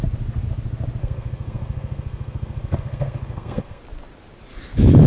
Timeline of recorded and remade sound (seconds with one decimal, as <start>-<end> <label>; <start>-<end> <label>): 0.0-1.0 recorded; 1.0-3.8 remade; 3.8-5.1 recorded